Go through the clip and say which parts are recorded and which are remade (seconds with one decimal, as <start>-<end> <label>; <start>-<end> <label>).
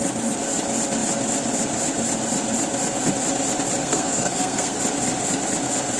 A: 0.0-3.8 recorded; 3.8-4.8 remade; 4.8-6.0 recorded